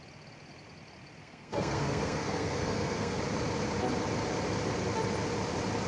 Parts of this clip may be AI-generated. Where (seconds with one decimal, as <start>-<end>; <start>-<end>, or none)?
1.2-3.2

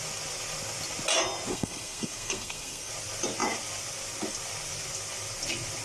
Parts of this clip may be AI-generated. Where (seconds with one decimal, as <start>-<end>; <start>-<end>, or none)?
1.5-2.9

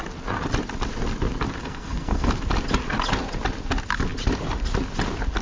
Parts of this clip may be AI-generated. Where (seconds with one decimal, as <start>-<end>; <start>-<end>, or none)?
1.6-2.3

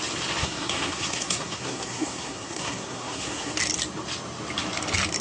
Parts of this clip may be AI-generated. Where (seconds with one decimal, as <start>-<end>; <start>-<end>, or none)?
0.4-3.5

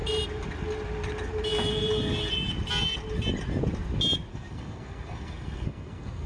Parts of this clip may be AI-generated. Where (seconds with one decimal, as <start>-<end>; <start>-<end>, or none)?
4.3-6.3

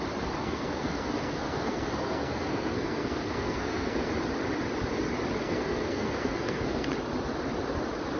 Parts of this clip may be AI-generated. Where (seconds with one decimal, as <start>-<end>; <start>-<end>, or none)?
0.4-4.1; 5.4-6.9

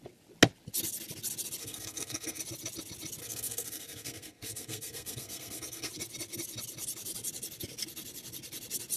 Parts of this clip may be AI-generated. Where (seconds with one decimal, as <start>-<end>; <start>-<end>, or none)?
1.6-2.4; 3.2-5.9